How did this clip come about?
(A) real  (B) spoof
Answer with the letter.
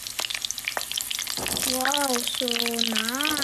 A